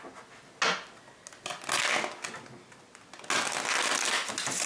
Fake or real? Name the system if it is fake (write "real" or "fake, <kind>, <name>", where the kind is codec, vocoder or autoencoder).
real